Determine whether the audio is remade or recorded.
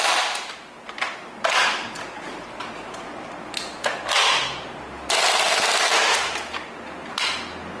recorded